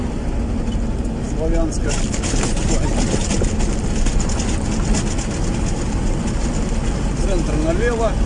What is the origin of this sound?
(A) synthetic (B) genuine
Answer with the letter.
B